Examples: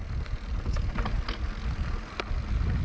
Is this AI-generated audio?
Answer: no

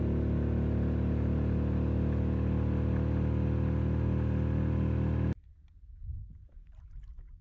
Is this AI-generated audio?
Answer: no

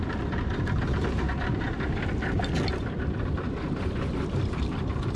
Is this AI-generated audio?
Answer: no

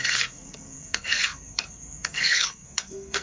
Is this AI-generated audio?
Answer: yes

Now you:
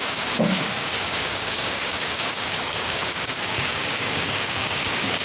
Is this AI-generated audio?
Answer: yes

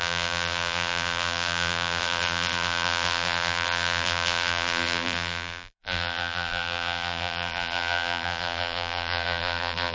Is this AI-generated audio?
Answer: yes